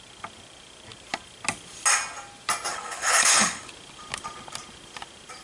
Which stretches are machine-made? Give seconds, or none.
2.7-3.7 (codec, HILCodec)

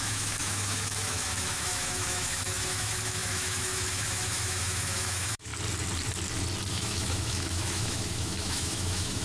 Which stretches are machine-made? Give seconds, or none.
0.0-5.5 (autoencoder, DAC-VAE); 6.7-9.2

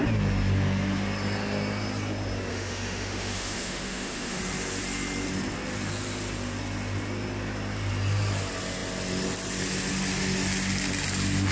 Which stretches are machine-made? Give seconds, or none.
2.5-4.4 (autoencoder, DAC-VAE)

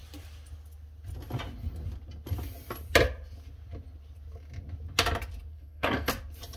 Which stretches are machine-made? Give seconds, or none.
5.5-6.1 (codec, SNAC)